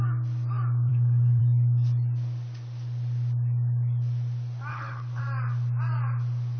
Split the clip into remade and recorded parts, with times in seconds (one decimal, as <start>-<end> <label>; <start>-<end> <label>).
0.0-0.9 recorded; 0.9-1.4 remade; 1.4-4.7 recorded; 4.7-5.2 remade; 5.2-6.6 recorded

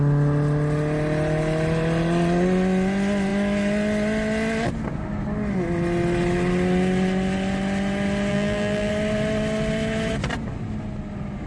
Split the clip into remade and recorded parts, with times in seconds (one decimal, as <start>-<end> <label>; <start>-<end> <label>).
0.0-8.3 recorded; 8.3-8.9 remade; 8.9-11.5 recorded

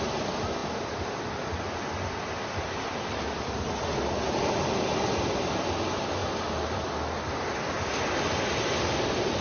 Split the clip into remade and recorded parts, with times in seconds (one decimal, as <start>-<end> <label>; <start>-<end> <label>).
0.0-9.4 recorded

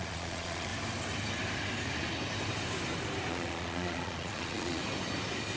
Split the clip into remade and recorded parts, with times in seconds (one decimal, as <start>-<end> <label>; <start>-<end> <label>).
0.0-0.7 remade; 0.7-3.3 recorded; 3.3-4.8 remade; 4.8-5.6 recorded

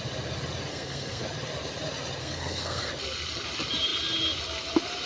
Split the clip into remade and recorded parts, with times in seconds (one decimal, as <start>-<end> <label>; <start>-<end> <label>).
0.0-0.7 recorded; 0.7-1.2 remade; 1.2-2.2 recorded; 2.2-2.9 remade; 2.9-5.1 recorded

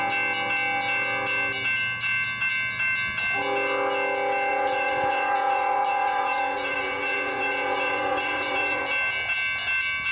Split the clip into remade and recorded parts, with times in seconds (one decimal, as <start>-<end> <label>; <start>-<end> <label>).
0.0-4.5 recorded; 4.5-8.8 remade; 8.8-10.1 recorded